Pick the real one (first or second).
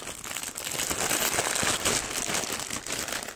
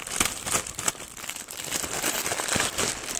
first